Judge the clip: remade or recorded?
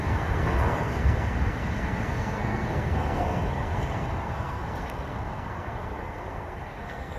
remade